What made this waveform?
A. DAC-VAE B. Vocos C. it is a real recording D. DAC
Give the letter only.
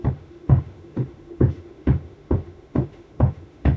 A